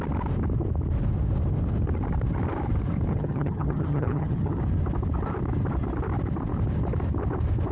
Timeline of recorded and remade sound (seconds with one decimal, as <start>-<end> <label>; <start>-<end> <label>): 0.0-3.1 recorded; 3.1-4.6 remade; 4.6-7.7 recorded